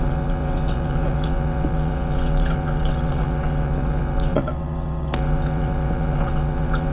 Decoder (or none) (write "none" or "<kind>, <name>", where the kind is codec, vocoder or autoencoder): vocoder, WaveNeXt